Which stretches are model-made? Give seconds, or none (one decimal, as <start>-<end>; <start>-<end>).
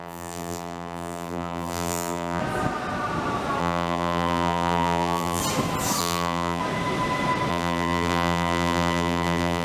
0.0-2.4; 3.6-5.4; 6.0-6.6; 7.5-9.6